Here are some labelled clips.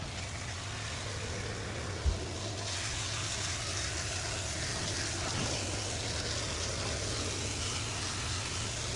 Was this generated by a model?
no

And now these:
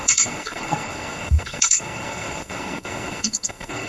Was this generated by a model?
yes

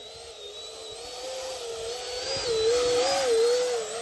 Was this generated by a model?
no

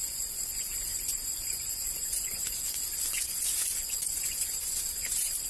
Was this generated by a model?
yes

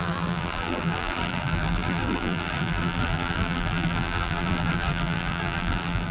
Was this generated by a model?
yes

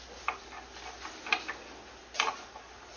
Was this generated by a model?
no